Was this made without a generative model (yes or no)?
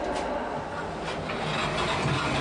yes